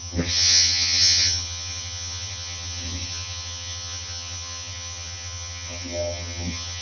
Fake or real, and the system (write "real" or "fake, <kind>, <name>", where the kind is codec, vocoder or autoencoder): fake, vocoder, HiFi-GAN